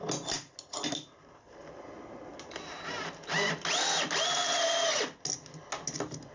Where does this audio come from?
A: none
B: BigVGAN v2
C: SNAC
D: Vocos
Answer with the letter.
A